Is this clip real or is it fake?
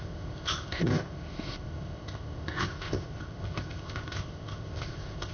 fake